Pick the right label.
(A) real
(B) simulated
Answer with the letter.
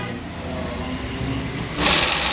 A